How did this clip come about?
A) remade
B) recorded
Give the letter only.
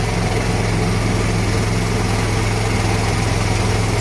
B